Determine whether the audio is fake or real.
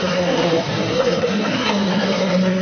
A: fake